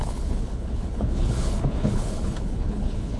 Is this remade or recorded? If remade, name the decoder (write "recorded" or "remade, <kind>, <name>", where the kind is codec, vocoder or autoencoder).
remade, codec, HILCodec